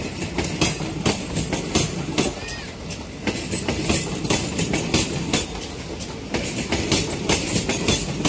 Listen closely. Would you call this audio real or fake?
real